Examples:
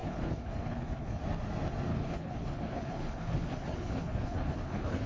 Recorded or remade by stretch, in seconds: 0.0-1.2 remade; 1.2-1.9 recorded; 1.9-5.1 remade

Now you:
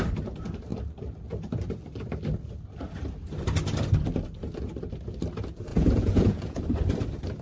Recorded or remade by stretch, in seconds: 0.0-5.7 recorded; 5.7-6.6 remade; 6.6-7.4 recorded